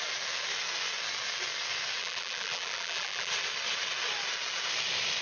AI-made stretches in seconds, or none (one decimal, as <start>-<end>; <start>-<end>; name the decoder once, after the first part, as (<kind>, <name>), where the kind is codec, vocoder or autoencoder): 2.0-3.3 (vocoder, BigVGAN v2)